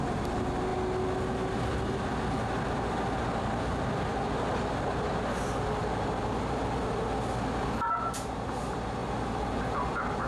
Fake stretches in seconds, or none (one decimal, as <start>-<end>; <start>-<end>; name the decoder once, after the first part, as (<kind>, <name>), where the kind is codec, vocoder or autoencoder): 9.0-9.8 (vocoder, BigVGAN v2)